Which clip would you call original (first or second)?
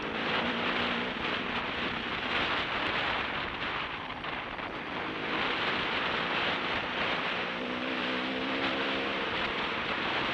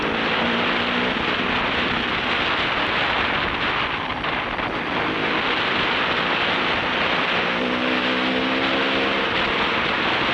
second